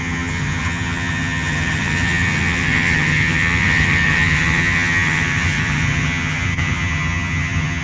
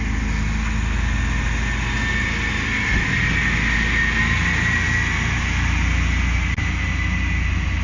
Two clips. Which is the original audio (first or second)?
second